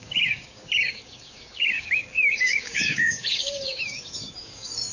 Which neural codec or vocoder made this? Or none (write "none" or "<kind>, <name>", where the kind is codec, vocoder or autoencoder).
codec, DAC